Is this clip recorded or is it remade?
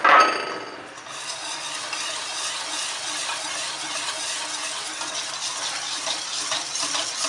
recorded